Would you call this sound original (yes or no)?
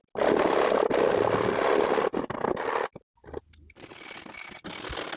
yes